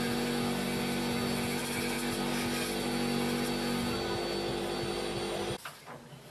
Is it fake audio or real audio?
real